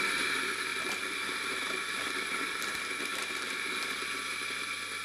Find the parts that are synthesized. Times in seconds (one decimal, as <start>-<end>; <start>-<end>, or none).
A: 0.7-1.5; 3.1-3.8